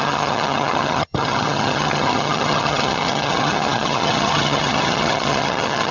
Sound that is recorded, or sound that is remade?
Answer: remade